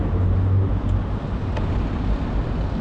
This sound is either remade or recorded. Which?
recorded